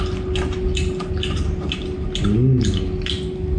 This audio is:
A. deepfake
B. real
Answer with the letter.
B